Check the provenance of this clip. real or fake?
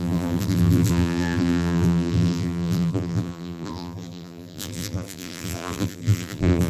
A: fake